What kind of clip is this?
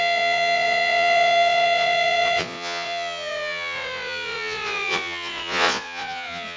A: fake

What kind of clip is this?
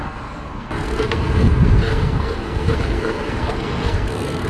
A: fake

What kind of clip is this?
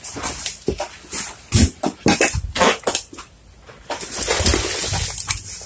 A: real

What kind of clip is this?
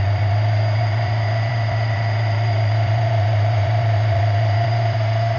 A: fake